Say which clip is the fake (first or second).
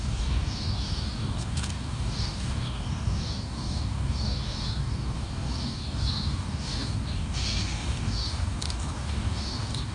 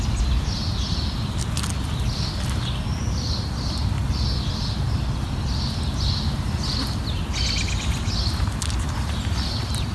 first